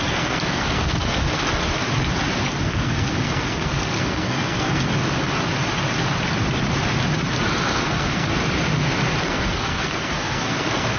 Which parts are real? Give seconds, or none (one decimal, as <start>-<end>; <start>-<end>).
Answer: 1.6-2.6; 4.9-7.8; 8.3-9.2